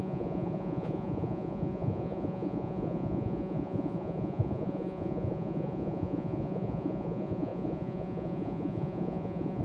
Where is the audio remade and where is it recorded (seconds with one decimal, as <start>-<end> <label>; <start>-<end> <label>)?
0.0-9.6 remade